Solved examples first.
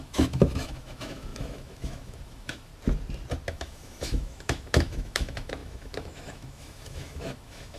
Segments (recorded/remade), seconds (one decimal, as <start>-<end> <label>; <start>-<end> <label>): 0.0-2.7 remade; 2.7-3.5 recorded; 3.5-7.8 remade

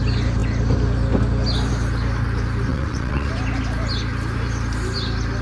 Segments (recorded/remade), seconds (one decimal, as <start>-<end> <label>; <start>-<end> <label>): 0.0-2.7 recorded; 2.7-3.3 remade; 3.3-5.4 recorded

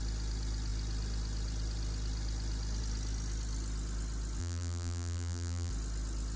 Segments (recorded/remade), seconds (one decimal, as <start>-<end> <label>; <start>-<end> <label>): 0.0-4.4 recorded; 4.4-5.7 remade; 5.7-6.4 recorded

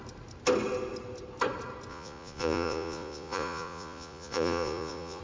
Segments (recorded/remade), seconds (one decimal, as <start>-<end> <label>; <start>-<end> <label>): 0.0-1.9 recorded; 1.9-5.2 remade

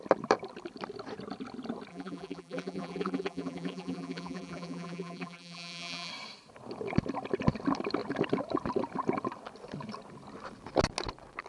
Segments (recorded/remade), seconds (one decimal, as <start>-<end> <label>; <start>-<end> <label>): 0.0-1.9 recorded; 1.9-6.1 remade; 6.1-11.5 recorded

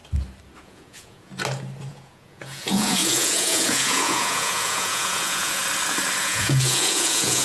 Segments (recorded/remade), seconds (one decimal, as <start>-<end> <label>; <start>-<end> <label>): 0.0-0.6 recorded; 0.6-1.3 remade; 1.3-1.9 recorded; 1.9-5.6 remade; 5.6-6.2 recorded; 6.2-7.4 remade

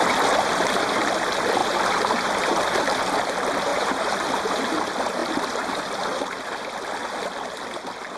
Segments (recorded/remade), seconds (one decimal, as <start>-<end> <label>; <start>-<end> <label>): 0.0-1.6 recorded; 1.6-2.8 remade; 2.8-3.7 recorded; 3.7-4.3 remade; 4.3-8.2 recorded